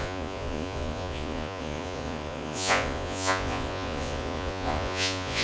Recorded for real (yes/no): no